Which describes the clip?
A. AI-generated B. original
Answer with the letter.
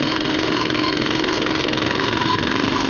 A